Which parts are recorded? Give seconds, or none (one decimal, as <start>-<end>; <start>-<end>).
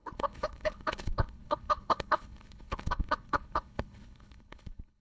none